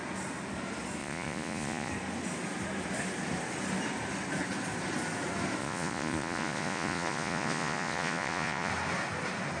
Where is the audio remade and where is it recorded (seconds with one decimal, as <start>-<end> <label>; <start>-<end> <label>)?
0.0-1.0 recorded; 1.0-1.9 remade; 1.9-5.6 recorded; 5.6-8.7 remade; 8.7-9.6 recorded